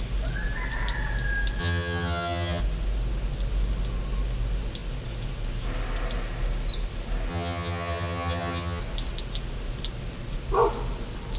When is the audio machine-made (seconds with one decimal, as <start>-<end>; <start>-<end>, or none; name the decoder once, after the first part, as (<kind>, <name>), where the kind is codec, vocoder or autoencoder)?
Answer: 1.6-2.6 (vocoder, HiFi-GAN); 7.3-8.8